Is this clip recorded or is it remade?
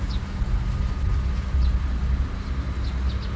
recorded